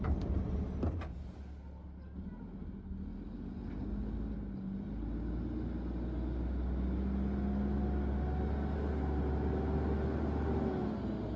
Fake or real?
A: real